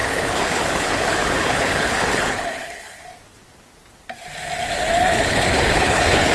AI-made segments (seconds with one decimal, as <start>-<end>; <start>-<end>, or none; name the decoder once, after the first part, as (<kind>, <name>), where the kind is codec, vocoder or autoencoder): 0.0-3.0 (codec, HILCodec); 5.0-6.3